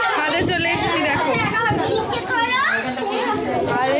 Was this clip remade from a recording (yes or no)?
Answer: no